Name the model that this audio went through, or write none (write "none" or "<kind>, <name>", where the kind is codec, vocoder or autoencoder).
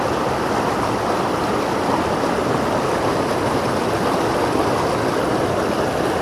none